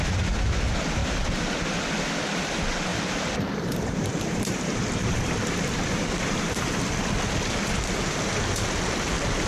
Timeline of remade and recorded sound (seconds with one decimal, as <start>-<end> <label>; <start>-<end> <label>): 0.0-1.0 recorded; 1.0-1.5 remade; 1.5-2.9 recorded; 2.9-7.0 remade; 7.0-9.5 recorded